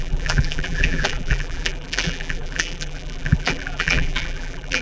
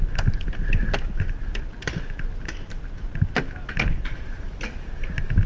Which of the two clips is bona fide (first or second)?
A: second